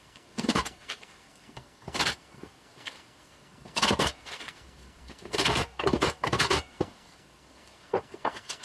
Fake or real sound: fake